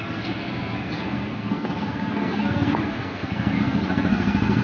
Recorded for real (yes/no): no